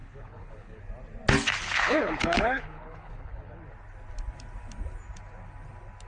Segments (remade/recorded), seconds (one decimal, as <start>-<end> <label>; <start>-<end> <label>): 0.0-0.8 remade; 0.8-1.6 recorded; 1.6-3.6 remade; 3.6-6.1 recorded